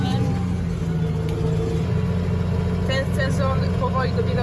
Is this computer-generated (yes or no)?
no